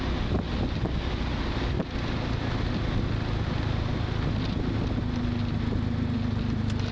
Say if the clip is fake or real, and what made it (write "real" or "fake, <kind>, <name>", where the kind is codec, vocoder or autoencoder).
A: real